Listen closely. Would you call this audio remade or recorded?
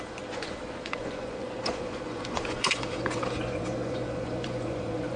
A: remade